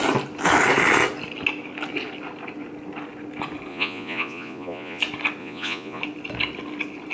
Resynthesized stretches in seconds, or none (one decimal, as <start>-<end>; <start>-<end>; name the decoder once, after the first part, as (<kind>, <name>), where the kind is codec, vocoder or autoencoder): 3.7-5.0 (vocoder, Vocos); 5.4-6.0